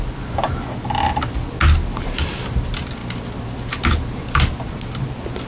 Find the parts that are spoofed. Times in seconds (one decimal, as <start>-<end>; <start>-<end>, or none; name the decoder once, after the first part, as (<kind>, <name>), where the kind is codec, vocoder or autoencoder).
none